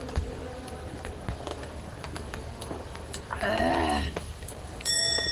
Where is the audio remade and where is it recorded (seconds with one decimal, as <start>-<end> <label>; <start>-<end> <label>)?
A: 0.0-5.3 remade